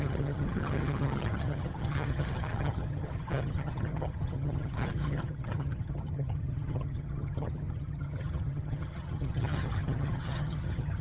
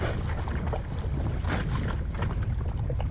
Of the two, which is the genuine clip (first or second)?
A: second